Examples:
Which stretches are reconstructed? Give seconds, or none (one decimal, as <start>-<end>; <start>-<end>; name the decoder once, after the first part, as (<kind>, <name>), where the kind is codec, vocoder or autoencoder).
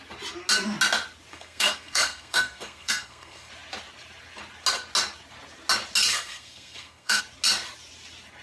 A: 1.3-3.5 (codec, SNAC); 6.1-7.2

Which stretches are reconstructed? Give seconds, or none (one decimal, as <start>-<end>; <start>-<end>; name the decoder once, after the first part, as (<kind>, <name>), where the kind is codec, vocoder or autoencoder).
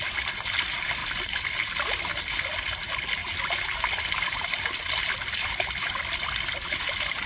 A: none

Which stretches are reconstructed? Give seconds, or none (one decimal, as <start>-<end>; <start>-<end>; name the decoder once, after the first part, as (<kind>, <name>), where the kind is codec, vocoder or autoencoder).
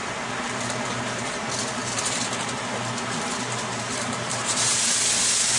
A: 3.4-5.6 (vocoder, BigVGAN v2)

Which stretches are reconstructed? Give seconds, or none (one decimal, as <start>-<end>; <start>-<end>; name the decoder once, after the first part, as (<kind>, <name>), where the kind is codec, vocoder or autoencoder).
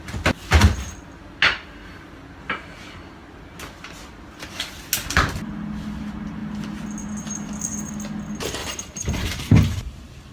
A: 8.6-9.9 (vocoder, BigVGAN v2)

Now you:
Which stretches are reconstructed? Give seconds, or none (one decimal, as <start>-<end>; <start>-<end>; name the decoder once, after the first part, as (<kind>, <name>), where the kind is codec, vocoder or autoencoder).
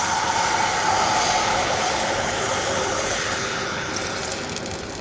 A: 1.5-3.9 (codec, HILCodec)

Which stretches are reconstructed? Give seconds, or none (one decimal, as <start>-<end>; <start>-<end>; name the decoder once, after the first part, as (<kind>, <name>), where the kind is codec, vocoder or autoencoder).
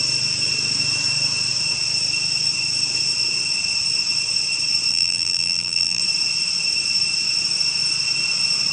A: 4.9-6.0 (vocoder, BigVGAN v2)